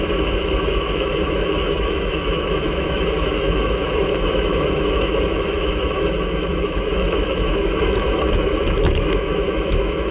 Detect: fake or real fake